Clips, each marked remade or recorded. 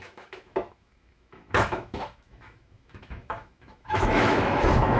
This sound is remade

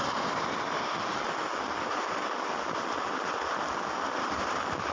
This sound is recorded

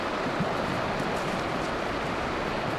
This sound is recorded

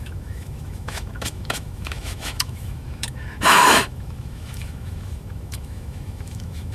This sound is remade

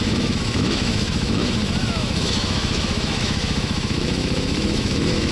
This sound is remade